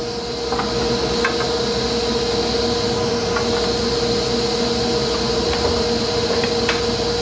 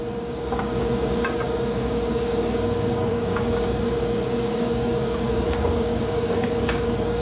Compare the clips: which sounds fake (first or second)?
second